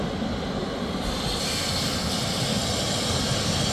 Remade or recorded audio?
recorded